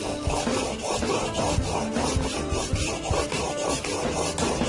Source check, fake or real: real